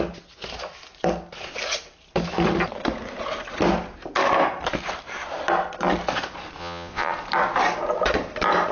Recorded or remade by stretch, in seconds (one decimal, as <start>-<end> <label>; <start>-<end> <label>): 0.0-6.6 recorded; 6.6-7.1 remade; 7.1-8.7 recorded